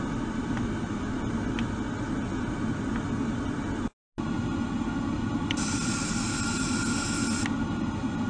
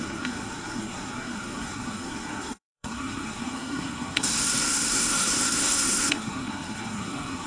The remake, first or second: second